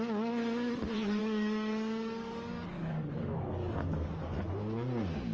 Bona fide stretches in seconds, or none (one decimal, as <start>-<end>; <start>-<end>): 0.0-1.2; 4.4-5.3